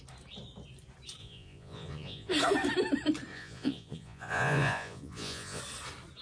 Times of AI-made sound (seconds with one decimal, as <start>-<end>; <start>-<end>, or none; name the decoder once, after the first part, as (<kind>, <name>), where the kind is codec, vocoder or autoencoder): 1.2-2.3 (vocoder, Vocos); 3.3-5.6